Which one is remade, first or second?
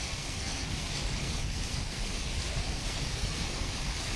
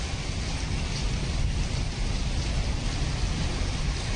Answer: first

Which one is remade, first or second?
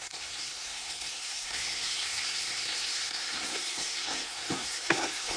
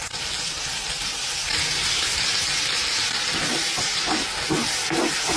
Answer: first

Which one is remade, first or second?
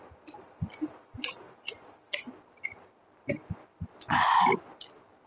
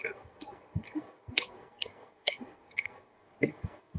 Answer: second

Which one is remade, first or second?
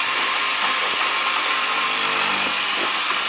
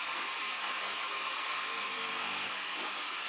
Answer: second